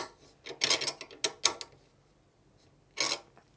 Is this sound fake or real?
real